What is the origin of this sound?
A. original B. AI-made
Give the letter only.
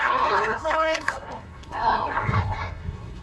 B